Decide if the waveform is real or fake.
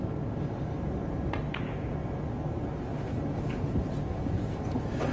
real